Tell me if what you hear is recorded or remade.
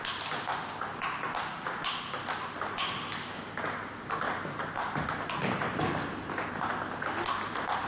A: recorded